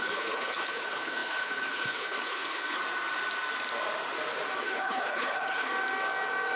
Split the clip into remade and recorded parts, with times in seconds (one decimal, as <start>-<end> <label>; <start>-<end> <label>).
0.0-2.8 remade; 2.8-4.6 recorded; 4.6-5.7 remade; 5.7-6.6 recorded